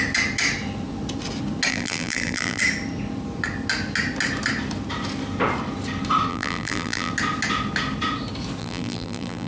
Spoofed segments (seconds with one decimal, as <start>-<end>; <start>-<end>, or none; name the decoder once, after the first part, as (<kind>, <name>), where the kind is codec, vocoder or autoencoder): 1.7-2.6 (vocoder, BigVGAN v2); 6.3-7.1; 8.6-9.5